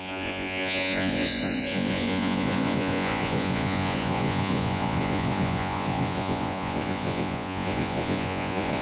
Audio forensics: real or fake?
fake